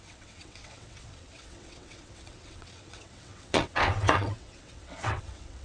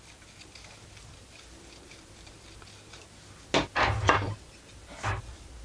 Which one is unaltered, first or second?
second